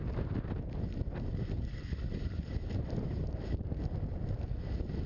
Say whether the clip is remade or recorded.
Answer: recorded